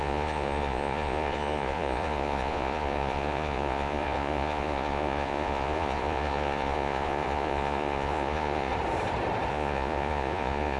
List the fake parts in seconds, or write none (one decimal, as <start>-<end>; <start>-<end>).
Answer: 0.0-8.7; 9.5-10.8